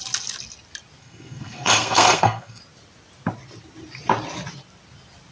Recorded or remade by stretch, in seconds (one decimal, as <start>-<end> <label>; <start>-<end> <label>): 0.0-1.0 recorded; 1.0-2.6 remade; 2.6-5.3 recorded